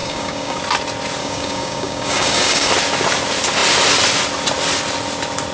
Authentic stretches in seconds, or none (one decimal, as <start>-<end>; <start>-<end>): 0.6-1.2; 2.7-5.5